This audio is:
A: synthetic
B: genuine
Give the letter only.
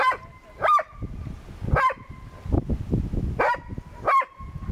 B